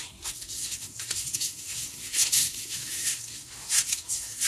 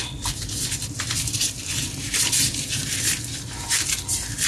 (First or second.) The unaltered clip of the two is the second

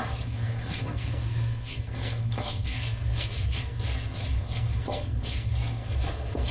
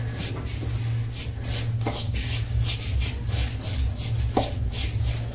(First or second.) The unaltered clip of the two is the second